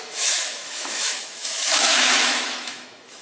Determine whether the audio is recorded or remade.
remade